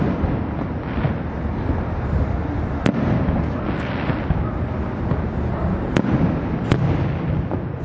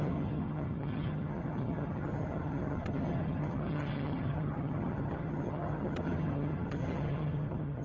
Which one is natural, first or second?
first